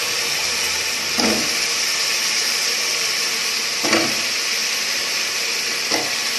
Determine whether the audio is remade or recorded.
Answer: recorded